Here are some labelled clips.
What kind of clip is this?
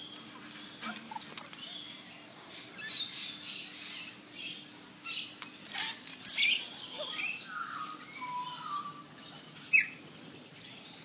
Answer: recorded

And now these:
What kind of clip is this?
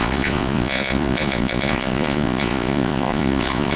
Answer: remade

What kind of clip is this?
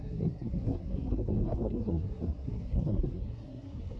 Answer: remade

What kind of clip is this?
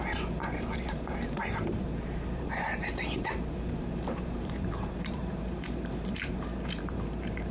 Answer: remade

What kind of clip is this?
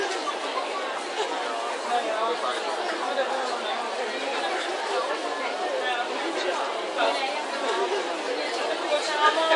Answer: recorded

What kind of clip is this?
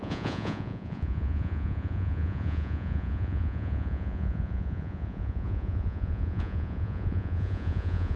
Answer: remade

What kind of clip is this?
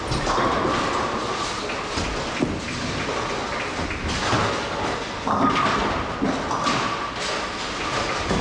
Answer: recorded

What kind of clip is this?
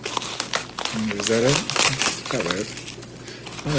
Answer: recorded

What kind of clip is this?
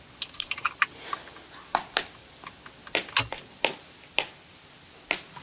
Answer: recorded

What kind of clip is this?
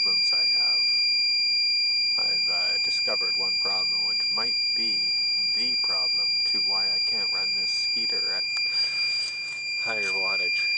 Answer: recorded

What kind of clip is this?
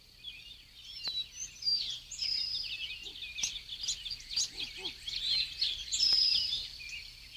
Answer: recorded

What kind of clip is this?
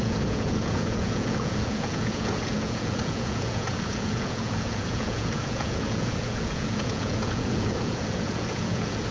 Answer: remade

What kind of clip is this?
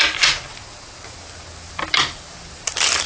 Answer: recorded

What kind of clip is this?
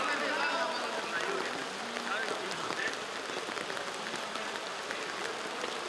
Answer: recorded